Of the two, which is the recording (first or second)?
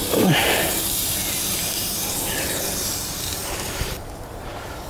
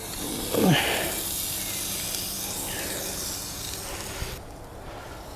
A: second